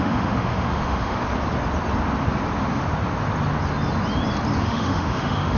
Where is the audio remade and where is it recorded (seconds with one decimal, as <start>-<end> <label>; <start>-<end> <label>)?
0.0-1.2 remade; 1.2-4.6 recorded; 4.6-5.6 remade